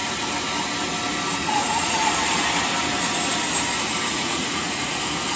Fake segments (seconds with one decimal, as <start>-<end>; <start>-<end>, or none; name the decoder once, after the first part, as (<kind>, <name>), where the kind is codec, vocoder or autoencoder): 1.4-2.0 (vocoder, Vocos); 4.1-4.9